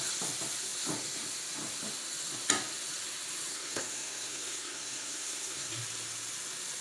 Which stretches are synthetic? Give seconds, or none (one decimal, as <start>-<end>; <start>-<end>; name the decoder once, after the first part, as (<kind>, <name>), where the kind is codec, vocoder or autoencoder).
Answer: 3.5-5.7 (codec, SNAC)